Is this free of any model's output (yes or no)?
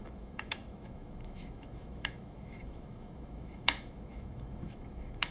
no